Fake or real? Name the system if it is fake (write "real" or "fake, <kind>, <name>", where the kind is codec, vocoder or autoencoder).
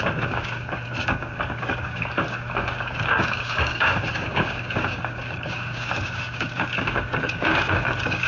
fake, codec, DAC